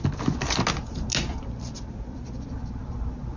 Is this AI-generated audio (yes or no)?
no